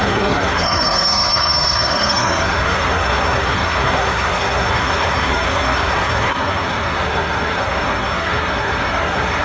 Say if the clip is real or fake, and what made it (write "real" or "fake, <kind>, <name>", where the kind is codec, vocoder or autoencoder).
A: fake, codec, SNAC